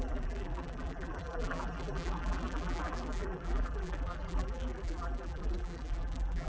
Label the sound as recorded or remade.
remade